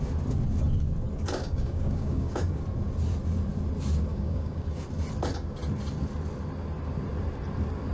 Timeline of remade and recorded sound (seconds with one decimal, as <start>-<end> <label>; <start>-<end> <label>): 0.0-1.4 recorded; 1.4-2.6 remade; 2.6-4.1 recorded; 4.1-4.8 remade; 4.8-7.9 recorded